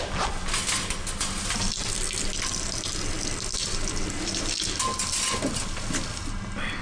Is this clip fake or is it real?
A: real